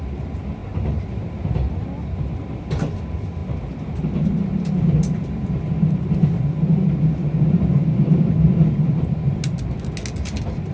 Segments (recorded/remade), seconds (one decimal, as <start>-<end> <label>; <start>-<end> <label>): 0.0-10.7 recorded

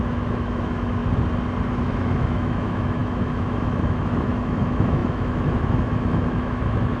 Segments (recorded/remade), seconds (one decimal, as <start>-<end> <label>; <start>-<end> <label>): 0.0-1.0 remade; 1.0-1.7 recorded; 1.7-7.0 remade

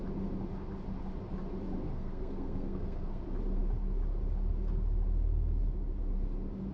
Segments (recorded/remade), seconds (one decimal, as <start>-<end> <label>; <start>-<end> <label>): 0.0-1.9 recorded; 1.9-3.2 remade; 3.2-6.7 recorded

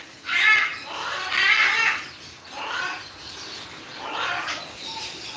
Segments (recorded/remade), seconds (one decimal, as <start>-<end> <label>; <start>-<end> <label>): 0.0-5.4 recorded

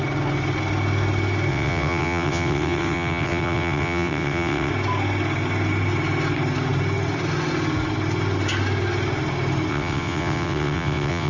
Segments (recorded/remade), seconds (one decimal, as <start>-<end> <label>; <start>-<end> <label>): 0.0-1.5 recorded; 1.5-4.7 remade; 4.7-9.7 recorded; 9.7-11.3 remade

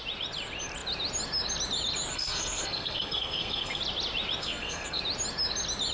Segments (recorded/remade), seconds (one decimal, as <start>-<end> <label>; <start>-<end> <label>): 0.0-2.1 recorded; 2.1-3.8 remade; 3.8-4.4 recorded; 4.4-5.0 remade; 5.0-5.9 recorded

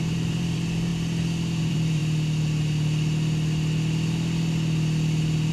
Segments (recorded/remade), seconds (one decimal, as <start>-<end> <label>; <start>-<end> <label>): 0.0-0.9 remade; 0.9-1.6 recorded; 1.6-2.0 remade; 2.0-5.5 recorded

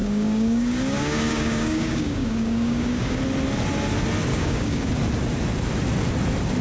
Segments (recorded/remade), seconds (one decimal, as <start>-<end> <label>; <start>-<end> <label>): 0.0-3.2 remade; 3.2-4.3 recorded; 4.3-4.9 remade; 4.9-6.6 recorded